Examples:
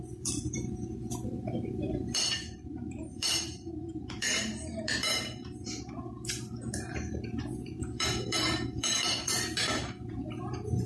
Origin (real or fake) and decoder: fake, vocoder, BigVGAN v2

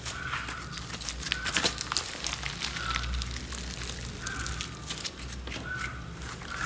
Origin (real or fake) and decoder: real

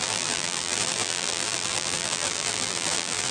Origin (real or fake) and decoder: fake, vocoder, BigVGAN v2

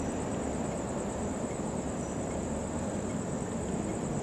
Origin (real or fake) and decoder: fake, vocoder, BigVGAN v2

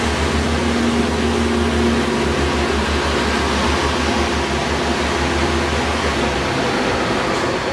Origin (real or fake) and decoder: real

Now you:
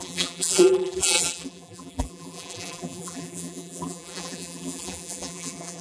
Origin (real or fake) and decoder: fake, vocoder, BigVGAN v2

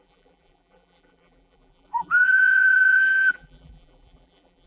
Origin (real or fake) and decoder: fake, vocoder, BigVGAN v2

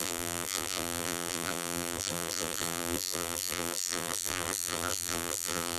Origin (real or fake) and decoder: fake, vocoder, BigVGAN v2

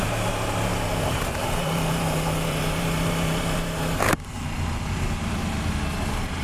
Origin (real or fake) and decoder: fake, vocoder, BigVGAN v2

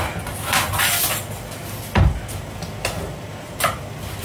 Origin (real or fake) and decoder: real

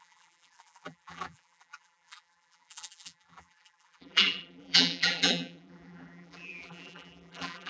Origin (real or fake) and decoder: fake, vocoder, BigVGAN v2